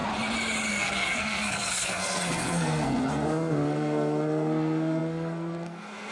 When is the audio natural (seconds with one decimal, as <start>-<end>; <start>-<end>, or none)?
0.0-0.7